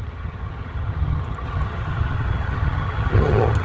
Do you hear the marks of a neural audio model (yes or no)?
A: yes